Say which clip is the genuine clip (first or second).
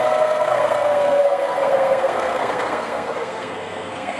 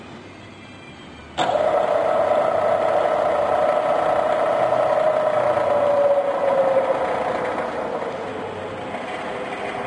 second